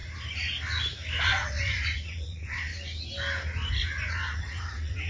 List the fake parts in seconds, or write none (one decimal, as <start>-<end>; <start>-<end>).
1.2-2.7; 4.1-5.1